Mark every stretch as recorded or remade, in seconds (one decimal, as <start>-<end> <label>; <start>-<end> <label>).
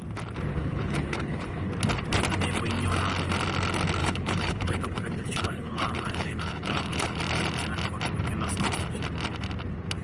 0.0-0.5 recorded; 0.5-1.7 remade; 1.7-4.0 recorded; 4.0-7.2 remade; 7.2-10.0 recorded